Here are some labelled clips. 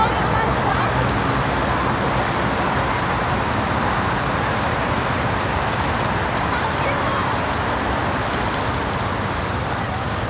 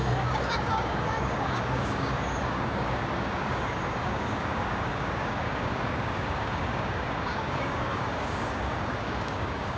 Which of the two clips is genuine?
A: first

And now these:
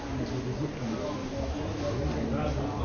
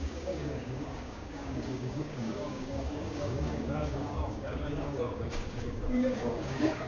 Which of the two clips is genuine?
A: first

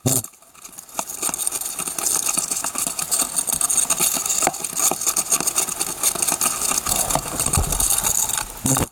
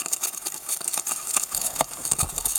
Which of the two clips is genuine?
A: first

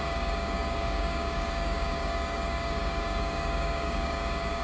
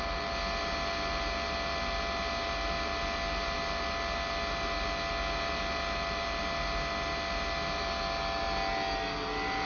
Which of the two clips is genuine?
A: second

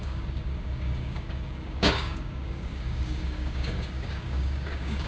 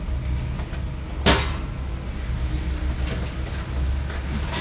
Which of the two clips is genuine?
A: second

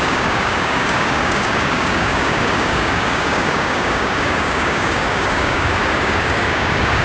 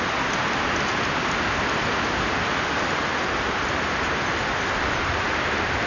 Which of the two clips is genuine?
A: second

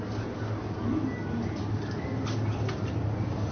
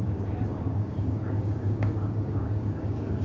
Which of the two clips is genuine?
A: first